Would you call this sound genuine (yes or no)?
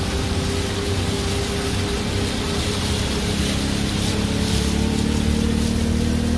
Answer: yes